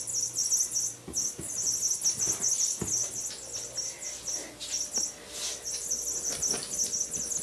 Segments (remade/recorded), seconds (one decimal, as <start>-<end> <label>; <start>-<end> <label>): 0.0-7.4 recorded